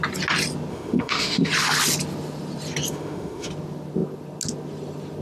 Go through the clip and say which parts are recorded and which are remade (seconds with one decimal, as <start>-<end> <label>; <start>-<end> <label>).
0.0-0.7 recorded; 0.7-1.5 remade; 1.5-2.9 recorded; 2.9-3.5 remade; 3.5-5.2 recorded

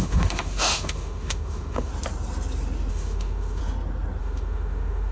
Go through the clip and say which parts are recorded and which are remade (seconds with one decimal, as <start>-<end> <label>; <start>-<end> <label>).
0.0-1.9 remade; 1.9-2.9 recorded; 2.9-3.6 remade; 3.6-4.2 recorded; 4.2-5.1 remade

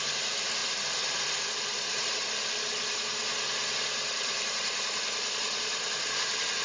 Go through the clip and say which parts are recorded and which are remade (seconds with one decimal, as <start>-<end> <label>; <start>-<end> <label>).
0.0-6.6 recorded